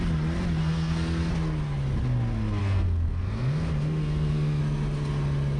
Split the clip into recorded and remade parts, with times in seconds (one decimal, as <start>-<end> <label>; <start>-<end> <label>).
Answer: 0.0-0.6 recorded; 0.6-1.3 remade; 1.3-2.6 recorded; 2.6-4.6 remade; 4.6-5.6 recorded